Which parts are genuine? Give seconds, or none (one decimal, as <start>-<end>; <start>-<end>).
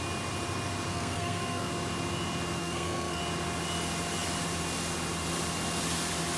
0.0-0.9; 1.7-2.6; 3.2-6.4